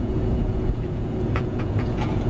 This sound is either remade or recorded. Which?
remade